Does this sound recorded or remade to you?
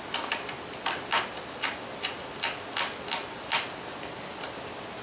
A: recorded